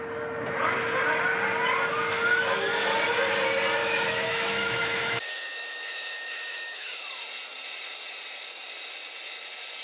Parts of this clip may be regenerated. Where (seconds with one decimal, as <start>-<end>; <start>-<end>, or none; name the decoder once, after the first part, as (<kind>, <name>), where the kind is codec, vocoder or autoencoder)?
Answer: 3.8-7.0 (autoencoder, DAC-VAE)